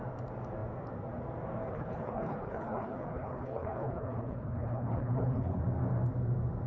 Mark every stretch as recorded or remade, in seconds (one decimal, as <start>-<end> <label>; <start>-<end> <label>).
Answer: 0.0-1.6 recorded; 1.6-5.6 remade; 5.6-6.7 recorded